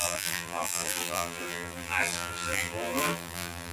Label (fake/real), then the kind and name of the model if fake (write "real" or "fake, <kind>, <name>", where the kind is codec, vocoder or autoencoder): fake, vocoder, BigVGAN v2